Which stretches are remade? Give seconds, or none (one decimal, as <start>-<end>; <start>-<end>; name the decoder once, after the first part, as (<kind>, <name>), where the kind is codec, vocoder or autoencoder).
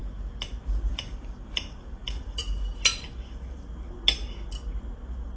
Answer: 0.9-3.7 (vocoder, BigVGAN v2)